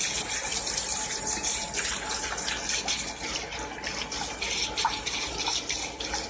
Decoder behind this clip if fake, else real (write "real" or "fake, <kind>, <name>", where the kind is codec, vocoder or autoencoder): real